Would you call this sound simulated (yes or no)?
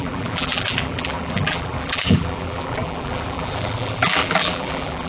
yes